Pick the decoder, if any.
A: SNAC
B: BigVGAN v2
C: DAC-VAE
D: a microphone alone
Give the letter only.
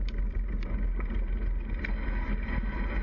D